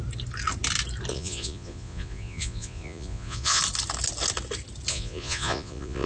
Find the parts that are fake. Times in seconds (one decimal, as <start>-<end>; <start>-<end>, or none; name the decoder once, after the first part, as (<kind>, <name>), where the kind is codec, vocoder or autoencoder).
1.1-3.6 (vocoder, Vocos); 4.9-6.1

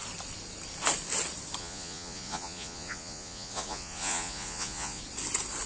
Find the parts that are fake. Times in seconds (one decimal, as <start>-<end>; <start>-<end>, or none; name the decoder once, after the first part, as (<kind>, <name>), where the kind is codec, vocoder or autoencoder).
1.6-5.0 (vocoder, Vocos)

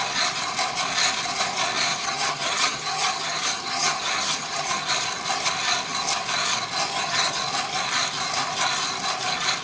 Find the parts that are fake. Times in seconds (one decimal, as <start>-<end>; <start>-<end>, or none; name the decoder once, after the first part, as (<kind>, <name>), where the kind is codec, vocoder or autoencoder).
1.9-4.9 (vocoder, HiFi-GAN); 6.9-7.4

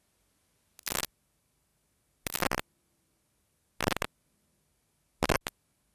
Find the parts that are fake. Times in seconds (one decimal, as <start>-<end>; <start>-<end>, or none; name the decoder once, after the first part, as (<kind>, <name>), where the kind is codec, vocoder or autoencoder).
none

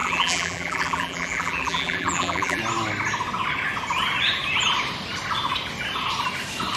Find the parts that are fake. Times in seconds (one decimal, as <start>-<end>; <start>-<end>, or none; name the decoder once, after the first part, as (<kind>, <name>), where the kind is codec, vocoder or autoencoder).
0.0-2.6 (vocoder, BigVGAN v2)